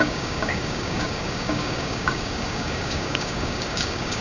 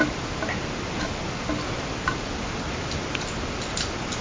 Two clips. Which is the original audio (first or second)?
second